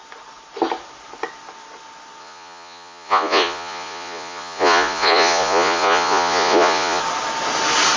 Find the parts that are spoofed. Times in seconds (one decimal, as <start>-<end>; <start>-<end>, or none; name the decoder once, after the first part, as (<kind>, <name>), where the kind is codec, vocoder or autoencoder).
2.2-7.0 (vocoder, Vocos)